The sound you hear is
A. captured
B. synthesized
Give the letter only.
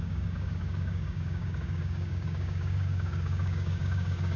B